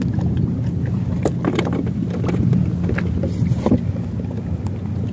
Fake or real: real